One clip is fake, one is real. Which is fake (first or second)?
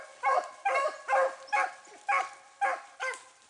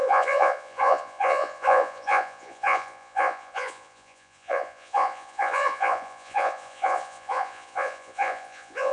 second